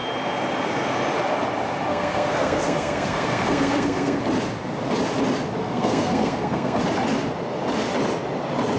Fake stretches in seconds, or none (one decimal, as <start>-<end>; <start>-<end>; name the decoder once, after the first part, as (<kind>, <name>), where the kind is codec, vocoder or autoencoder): 1.9-4.2 (codec, SNAC); 5.6-6.8